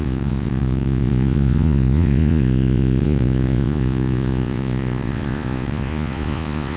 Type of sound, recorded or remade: remade